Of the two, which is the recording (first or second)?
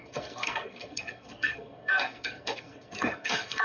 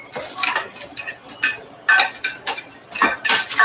second